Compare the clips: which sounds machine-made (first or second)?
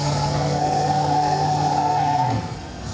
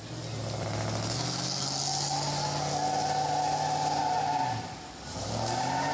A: first